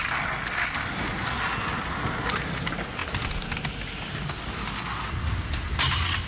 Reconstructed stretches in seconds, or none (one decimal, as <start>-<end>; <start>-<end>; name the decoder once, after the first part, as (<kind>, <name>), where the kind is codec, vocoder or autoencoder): none